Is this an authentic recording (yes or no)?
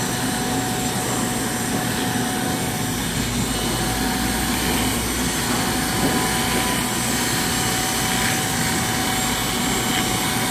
yes